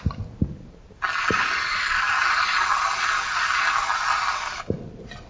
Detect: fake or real real